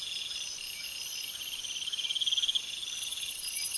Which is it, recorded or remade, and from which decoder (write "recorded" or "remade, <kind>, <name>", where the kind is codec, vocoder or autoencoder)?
recorded